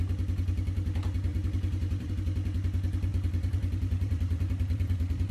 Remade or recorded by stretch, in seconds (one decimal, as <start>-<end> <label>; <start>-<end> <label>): 0.0-1.3 recorded; 1.3-2.1 remade; 2.1-3.1 recorded; 3.1-5.3 remade